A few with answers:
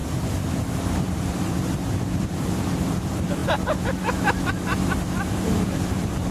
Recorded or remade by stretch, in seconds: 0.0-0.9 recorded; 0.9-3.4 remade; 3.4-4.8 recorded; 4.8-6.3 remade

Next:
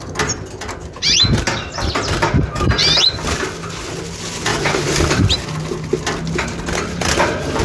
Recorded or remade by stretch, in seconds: 0.0-4.5 recorded; 4.5-5.2 remade; 5.2-7.6 recorded

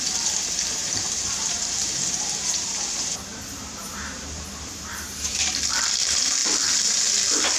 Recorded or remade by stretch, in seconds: 0.0-0.8 recorded; 0.8-5.4 remade; 5.4-7.6 recorded

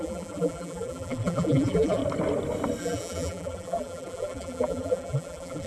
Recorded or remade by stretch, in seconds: 0.0-2.0 remade; 2.0-2.8 recorded; 2.8-5.7 remade